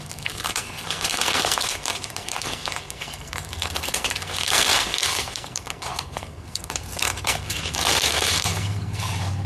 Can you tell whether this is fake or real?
fake